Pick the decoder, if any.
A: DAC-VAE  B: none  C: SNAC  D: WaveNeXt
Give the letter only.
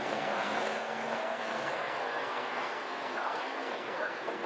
C